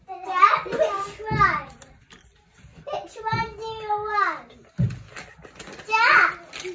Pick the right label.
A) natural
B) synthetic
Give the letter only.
A